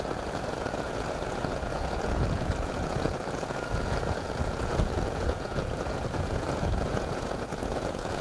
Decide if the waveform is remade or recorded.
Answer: remade